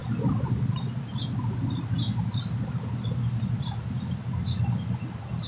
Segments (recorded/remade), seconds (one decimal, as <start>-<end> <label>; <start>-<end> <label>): 0.0-5.5 recorded